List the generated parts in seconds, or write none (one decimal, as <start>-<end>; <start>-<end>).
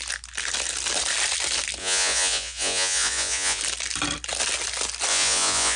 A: 1.8-3.6; 5.1-5.8